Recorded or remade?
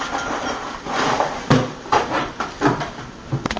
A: recorded